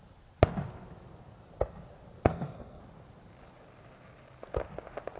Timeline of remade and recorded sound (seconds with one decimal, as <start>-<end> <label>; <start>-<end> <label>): 0.0-2.3 recorded; 2.3-2.8 remade; 2.8-5.2 recorded

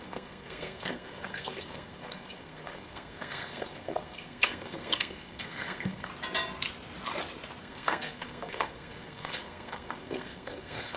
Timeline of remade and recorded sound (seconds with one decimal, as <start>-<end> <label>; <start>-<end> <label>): 0.0-6.1 remade; 6.1-7.6 recorded; 7.6-11.0 remade

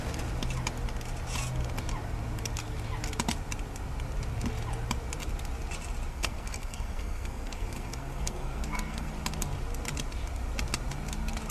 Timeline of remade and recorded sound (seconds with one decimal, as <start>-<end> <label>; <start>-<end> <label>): 0.0-6.1 recorded; 6.1-9.1 remade; 9.1-11.5 recorded

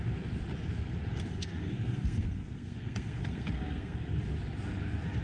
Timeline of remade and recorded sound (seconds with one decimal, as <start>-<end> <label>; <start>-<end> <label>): 0.0-1.1 recorded; 1.1-4.2 remade; 4.2-5.2 recorded

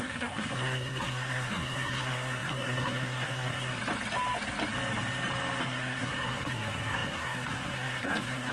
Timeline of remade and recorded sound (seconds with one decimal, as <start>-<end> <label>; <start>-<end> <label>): 0.0-3.8 remade; 3.8-5.6 recorded; 5.6-8.5 remade

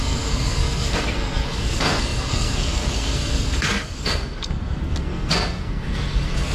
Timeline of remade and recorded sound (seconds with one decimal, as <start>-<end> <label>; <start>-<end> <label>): 0.0-6.5 remade

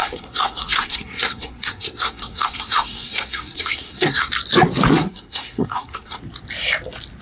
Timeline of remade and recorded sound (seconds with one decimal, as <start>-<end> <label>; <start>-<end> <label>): 0.0-4.3 remade; 4.3-4.9 recorded; 4.9-6.2 remade; 6.2-7.2 recorded

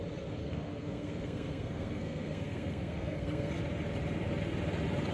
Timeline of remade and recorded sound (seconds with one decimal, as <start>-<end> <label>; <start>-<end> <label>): 0.0-0.4 recorded; 0.4-3.5 remade; 3.5-5.1 recorded